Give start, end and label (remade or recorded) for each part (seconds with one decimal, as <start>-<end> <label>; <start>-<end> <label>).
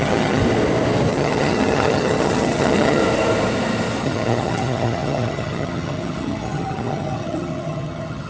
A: 0.0-0.4 remade; 0.4-1.1 recorded; 1.1-3.0 remade; 3.0-4.0 recorded; 4.0-8.3 remade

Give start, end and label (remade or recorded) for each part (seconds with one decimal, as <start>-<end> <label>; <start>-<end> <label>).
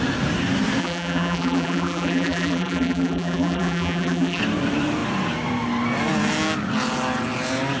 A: 0.0-0.8 recorded; 0.8-4.4 remade; 4.4-7.8 recorded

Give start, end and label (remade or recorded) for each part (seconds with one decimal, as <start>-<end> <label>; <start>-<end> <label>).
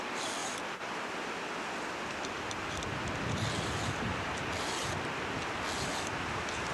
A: 0.0-0.4 recorded; 0.4-4.4 remade; 4.4-6.7 recorded